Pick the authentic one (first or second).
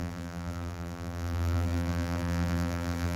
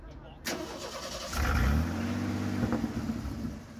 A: second